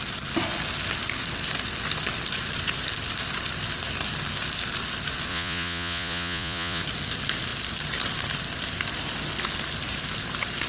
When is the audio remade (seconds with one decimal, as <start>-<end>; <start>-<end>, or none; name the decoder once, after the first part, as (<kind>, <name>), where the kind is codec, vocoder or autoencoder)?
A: 5.3-6.8 (vocoder, Vocos)